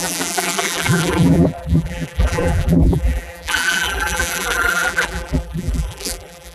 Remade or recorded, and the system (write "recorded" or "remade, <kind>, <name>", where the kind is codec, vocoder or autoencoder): remade, vocoder, BigVGAN v2